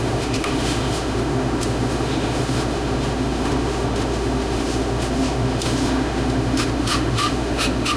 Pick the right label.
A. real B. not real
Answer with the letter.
B